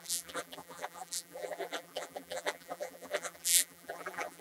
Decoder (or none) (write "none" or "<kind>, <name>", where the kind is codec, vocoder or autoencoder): vocoder, BigVGAN v2